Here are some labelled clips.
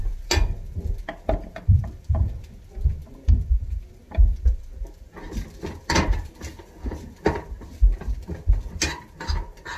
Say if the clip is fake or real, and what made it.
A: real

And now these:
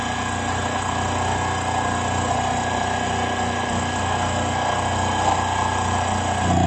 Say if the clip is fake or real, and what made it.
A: real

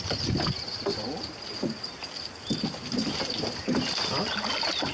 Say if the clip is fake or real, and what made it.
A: real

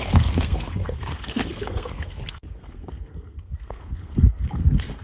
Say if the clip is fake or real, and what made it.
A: fake, codec, SNAC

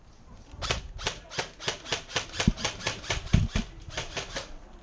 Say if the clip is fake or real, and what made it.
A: real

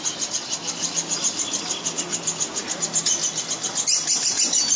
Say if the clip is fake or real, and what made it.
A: real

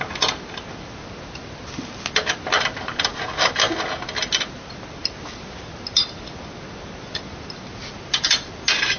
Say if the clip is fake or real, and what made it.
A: real